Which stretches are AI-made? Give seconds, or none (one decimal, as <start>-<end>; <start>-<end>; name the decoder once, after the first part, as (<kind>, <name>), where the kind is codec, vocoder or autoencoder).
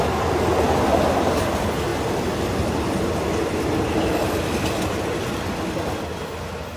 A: none